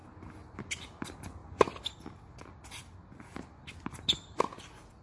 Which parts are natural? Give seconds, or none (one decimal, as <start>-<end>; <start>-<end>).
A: 0.0-5.0